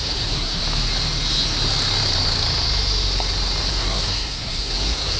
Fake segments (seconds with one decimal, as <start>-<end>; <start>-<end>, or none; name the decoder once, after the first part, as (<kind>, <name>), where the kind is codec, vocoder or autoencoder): 0.0-0.6 (codec, SNAC); 3.7-5.2